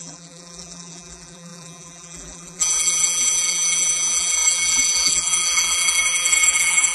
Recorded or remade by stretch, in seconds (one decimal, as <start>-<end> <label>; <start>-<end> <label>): 0.0-6.9 remade